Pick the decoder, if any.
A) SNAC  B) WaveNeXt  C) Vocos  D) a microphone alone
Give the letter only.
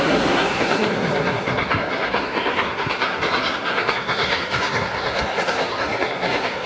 A